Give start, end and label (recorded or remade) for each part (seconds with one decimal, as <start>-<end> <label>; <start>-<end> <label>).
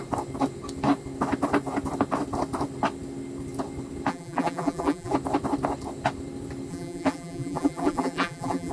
0.0-4.1 recorded; 4.1-5.1 remade; 5.1-6.7 recorded; 6.7-8.7 remade